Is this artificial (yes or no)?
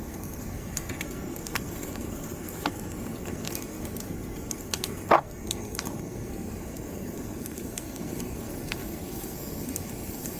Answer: yes